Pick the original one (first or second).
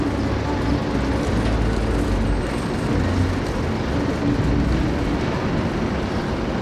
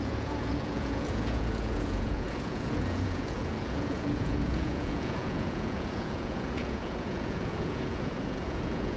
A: first